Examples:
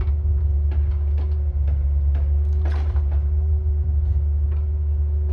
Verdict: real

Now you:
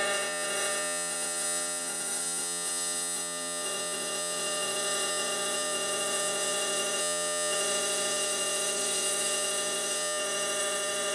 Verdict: fake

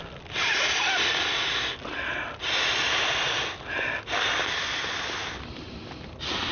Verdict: real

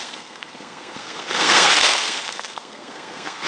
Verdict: fake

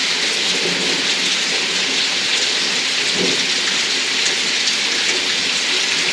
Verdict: real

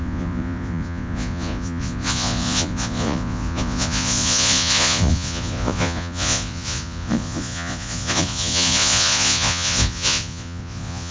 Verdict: fake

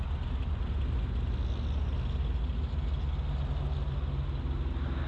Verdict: real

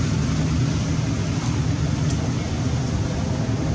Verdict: real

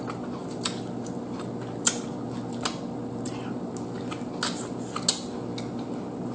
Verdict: real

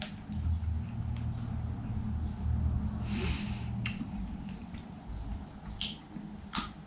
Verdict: real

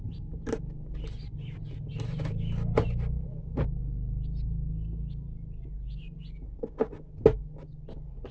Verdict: real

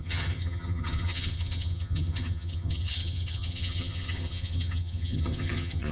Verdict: fake